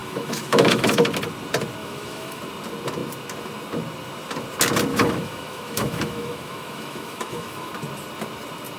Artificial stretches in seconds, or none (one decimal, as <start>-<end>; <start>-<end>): 0.0-1.0; 1.8-2.4; 4.9-7.7